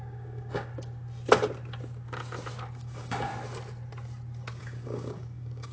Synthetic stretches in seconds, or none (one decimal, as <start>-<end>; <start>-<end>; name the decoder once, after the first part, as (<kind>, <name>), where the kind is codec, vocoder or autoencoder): 0.0-0.7 (codec, DAC); 2.8-3.3; 4.6-5.7